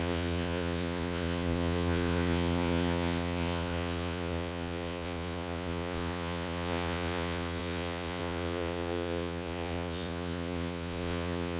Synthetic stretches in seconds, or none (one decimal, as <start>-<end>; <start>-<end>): 0.0-11.6